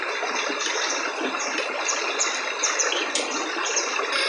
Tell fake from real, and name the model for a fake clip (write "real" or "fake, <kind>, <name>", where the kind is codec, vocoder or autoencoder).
real